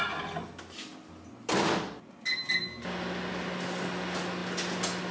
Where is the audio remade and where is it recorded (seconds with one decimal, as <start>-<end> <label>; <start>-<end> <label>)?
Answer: 0.0-5.1 recorded